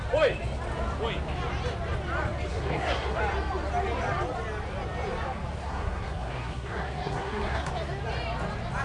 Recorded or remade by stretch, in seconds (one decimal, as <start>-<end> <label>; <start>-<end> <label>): 0.0-2.5 recorded; 2.5-3.2 remade; 3.2-5.6 recorded; 5.6-7.7 remade; 7.7-8.8 recorded

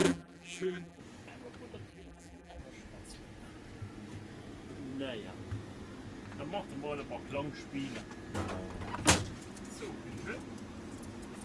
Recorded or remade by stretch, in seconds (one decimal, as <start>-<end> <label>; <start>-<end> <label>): 0.0-1.0 remade; 1.0-1.9 recorded; 1.9-2.6 remade; 2.6-11.4 recorded